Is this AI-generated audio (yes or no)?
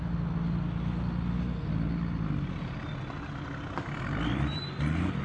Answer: no